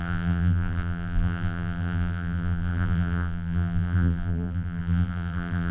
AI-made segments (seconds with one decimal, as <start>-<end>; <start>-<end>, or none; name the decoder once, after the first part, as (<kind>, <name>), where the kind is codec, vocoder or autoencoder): 0.0-5.7 (vocoder, BigVGAN v2)

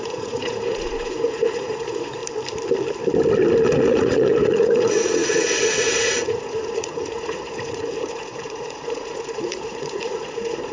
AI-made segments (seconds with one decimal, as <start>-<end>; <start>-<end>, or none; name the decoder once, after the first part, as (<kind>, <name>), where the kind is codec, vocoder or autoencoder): 0.0-2.2 (vocoder, Vocos); 3.6-10.7

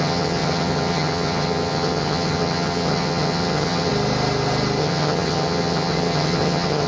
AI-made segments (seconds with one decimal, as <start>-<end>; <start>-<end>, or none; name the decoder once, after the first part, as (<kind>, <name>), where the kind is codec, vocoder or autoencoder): 0.0-3.9 (vocoder, HiFi-GAN); 4.8-6.9

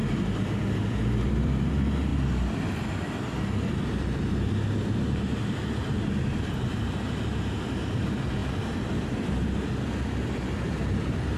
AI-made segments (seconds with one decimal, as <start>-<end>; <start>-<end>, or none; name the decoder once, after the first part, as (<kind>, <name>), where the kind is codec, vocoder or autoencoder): 0.0-1.7 (vocoder, BigVGAN v2); 2.1-4.5; 8.4-9.7

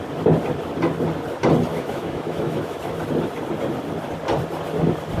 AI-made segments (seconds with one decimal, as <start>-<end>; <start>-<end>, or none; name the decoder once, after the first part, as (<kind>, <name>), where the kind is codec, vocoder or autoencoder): 1.7-2.8 (autoencoder, DAC-VAE)